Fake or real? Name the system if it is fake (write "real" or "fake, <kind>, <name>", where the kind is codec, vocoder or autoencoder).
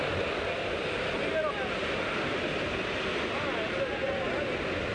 real